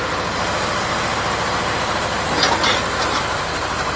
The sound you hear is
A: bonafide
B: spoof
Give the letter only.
B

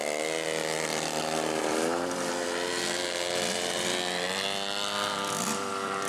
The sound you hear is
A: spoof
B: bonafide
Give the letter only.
A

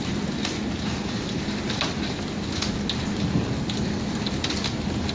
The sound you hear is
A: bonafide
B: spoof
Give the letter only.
A